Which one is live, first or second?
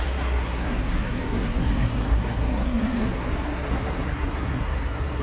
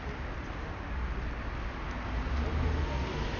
second